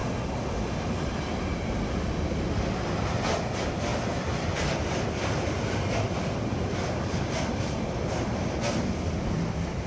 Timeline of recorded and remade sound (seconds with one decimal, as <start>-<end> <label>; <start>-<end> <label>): 0.0-3.9 recorded; 3.9-8.3 remade; 8.3-9.9 recorded